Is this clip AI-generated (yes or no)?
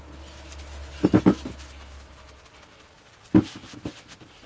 no